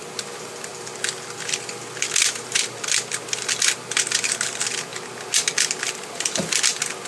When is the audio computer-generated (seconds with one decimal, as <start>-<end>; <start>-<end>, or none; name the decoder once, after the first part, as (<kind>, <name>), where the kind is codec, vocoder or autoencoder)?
0.7-3.7 (vocoder, BigVGAN v2)